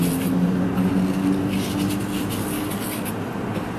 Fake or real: real